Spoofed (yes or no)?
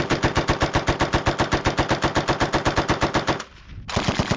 no